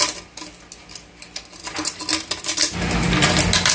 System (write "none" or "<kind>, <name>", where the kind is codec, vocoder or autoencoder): none